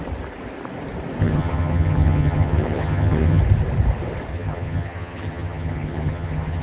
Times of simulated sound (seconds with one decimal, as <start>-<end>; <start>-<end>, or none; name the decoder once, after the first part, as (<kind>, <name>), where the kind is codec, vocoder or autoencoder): 1.2-3.4 (vocoder, HiFi-GAN); 4.3-6.6